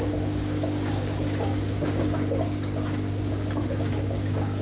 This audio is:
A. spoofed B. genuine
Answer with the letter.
A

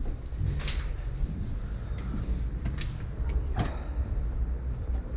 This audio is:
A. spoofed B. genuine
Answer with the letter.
B